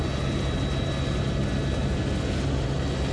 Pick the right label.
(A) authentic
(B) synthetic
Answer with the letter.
A